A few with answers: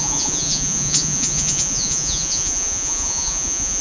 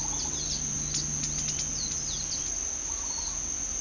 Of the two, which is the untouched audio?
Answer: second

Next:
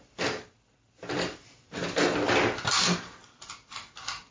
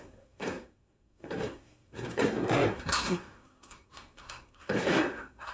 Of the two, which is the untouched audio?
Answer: first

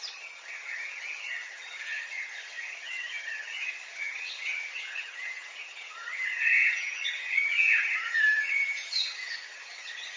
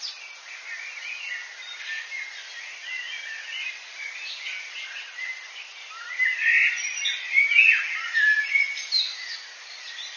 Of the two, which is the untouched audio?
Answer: second